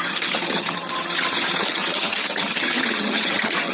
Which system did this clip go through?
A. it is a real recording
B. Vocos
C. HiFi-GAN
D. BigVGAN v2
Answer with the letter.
C